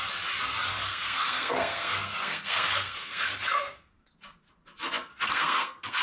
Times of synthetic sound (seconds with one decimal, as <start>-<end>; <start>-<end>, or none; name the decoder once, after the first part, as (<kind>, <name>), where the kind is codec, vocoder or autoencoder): 0.7-4.1 (codec, SNAC); 5.1-6.0